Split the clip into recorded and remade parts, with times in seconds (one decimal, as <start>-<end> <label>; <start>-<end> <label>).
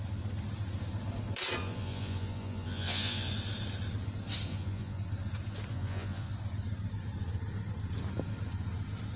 0.0-1.6 recorded; 1.6-3.3 remade; 3.3-4.5 recorded; 4.5-5.0 remade; 5.0-5.7 recorded; 5.7-6.3 remade; 6.3-9.2 recorded